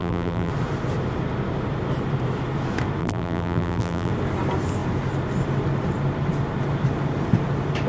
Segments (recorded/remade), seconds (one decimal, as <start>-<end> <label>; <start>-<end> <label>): 0.0-0.5 remade; 0.5-3.0 recorded; 3.0-4.1 remade; 4.1-7.9 recorded